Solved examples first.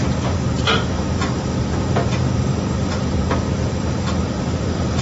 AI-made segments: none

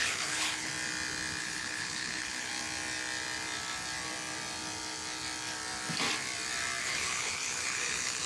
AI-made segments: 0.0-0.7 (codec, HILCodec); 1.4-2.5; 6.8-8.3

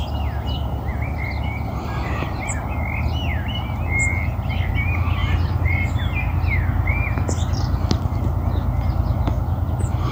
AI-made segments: 0.9-2.4 (vocoder, BigVGAN v2); 5.2-5.7

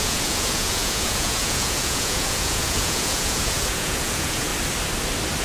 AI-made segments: 0.0-4.5 (vocoder, Vocos)

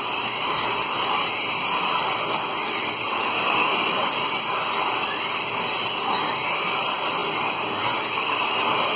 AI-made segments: none